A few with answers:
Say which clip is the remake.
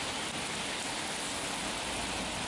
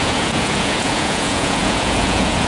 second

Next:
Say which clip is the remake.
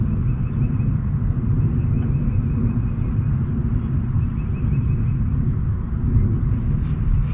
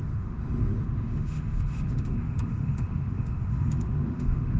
second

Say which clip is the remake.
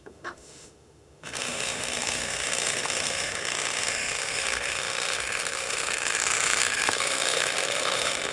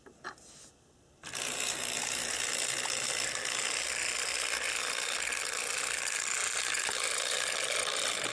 first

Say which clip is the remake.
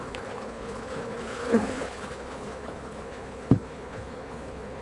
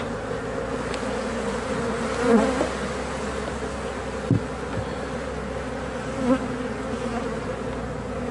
first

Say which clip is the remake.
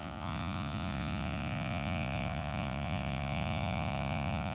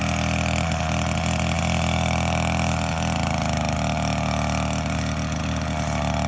first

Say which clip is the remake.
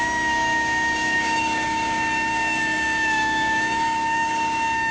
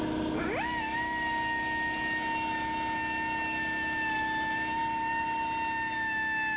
first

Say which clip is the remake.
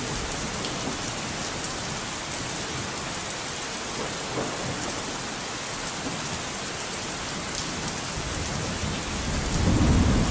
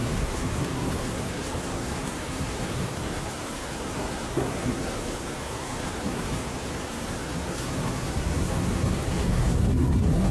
second